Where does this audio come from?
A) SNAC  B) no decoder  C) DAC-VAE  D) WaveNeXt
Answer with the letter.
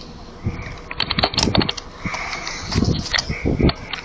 B